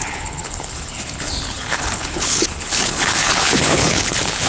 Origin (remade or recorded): remade